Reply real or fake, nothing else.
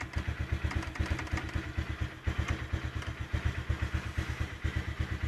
real